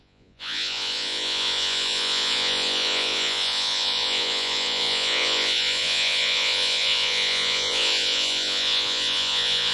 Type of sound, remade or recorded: remade